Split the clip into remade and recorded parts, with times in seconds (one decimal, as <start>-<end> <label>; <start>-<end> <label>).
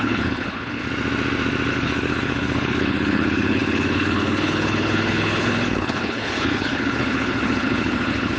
0.0-0.8 remade; 0.8-1.7 recorded; 1.7-8.4 remade